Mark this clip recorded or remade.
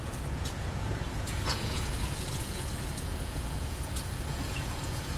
remade